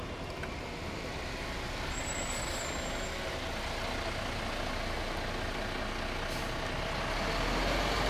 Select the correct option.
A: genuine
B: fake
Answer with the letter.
A